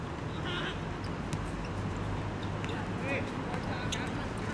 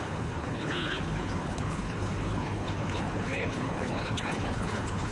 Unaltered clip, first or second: first